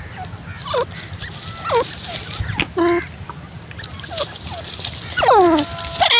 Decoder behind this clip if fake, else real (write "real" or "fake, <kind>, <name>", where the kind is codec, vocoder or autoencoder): real